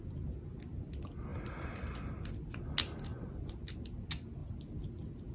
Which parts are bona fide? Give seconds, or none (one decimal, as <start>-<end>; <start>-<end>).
0.0-1.3; 2.1-5.3